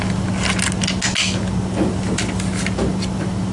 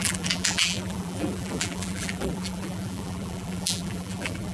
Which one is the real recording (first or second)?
first